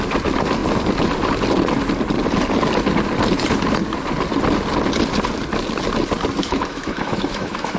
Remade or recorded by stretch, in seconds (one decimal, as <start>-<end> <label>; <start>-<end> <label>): 0.0-6.4 recorded; 6.4-7.8 remade